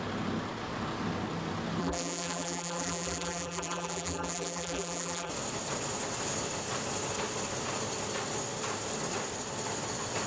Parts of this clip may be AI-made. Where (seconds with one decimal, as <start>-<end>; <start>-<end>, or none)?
1.8-5.3